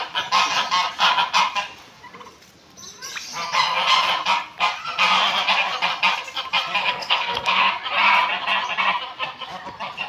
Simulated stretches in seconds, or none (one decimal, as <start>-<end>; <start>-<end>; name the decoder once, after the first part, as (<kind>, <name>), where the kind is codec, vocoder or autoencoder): 6.8-7.7 (codec, SNAC)